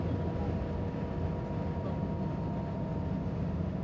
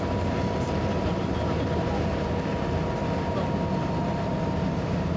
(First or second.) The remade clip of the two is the second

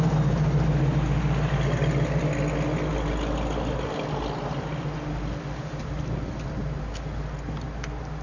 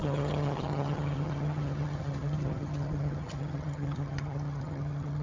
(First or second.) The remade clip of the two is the second